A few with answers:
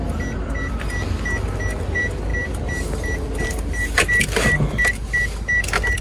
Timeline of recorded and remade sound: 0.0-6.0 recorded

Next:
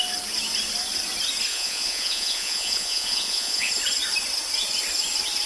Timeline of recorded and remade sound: 0.0-1.5 recorded; 1.5-3.7 remade; 3.7-5.5 recorded

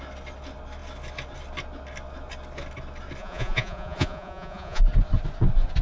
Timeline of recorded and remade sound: 0.0-3.2 recorded; 3.2-4.8 remade; 4.8-5.8 recorded

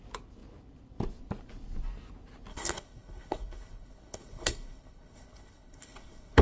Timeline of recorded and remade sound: 0.0-2.5 recorded; 2.5-6.4 remade

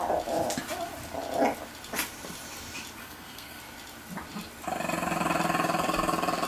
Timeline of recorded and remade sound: 0.0-3.0 recorded; 3.0-3.6 remade; 3.6-6.5 recorded

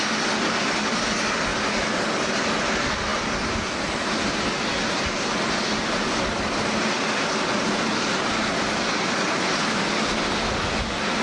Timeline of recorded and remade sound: 0.0-11.2 recorded

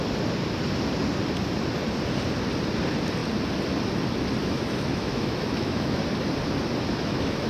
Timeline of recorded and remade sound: 0.0-4.4 recorded; 4.4-6.0 remade; 6.0-7.0 recorded; 7.0-7.5 remade